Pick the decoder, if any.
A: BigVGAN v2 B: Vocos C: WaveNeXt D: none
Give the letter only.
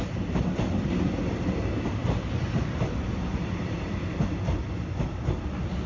D